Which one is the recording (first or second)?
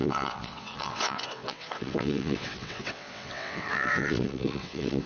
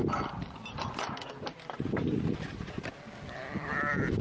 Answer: second